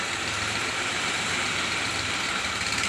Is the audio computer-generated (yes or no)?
yes